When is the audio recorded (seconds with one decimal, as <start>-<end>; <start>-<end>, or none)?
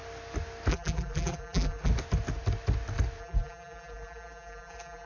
0.0-0.7; 1.9-3.2